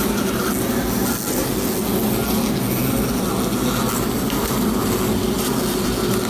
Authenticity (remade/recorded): recorded